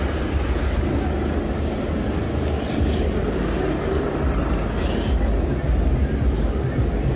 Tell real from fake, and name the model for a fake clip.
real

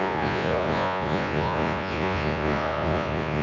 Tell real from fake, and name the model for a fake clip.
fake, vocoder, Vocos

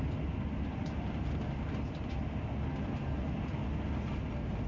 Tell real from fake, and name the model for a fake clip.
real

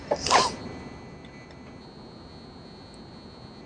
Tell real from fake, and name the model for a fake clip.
real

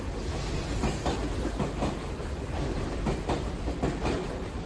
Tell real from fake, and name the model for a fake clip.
real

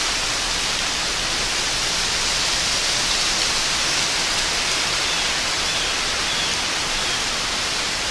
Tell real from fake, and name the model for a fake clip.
real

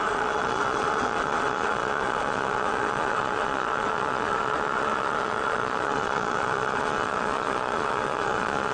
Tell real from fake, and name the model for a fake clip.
fake, vocoder, Vocos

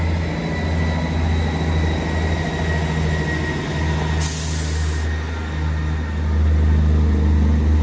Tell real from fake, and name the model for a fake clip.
real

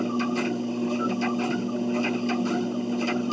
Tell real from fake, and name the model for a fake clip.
real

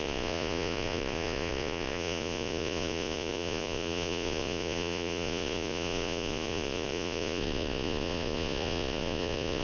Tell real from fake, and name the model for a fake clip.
fake, vocoder, Vocos